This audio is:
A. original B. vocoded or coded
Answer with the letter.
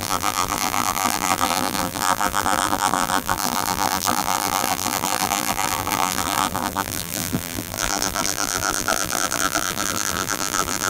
B